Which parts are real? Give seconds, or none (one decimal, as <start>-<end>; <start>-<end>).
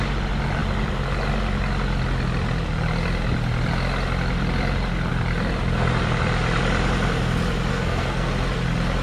0.0-7.7; 8.3-9.0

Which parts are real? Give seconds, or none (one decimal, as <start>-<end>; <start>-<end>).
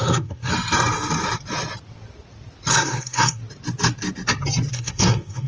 0.5-2.7; 3.4-4.7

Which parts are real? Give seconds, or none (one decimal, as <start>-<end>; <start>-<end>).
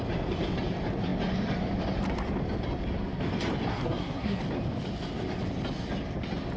0.0-3.7; 4.4-6.6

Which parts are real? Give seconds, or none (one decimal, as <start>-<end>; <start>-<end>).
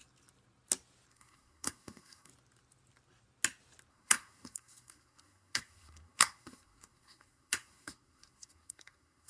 0.0-1.1; 2.3-3.9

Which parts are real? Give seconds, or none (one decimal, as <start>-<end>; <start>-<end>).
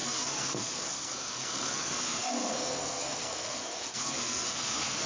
none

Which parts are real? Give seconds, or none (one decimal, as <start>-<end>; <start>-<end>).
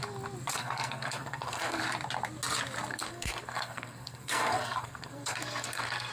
0.0-0.5; 1.8-2.9